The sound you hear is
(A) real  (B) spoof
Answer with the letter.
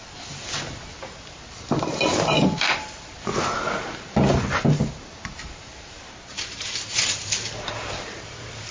B